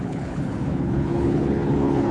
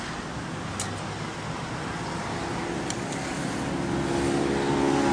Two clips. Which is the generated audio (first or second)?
first